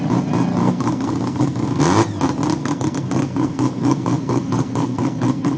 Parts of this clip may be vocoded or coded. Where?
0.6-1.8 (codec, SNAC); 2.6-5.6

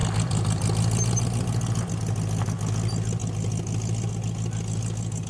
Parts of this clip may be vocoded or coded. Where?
none

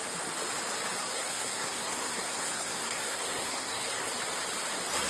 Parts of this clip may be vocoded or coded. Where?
1.0-4.1 (codec, SNAC)

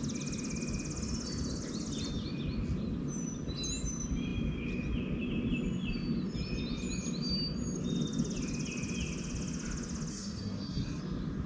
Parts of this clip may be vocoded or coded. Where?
10.1-11.0 (codec, SNAC)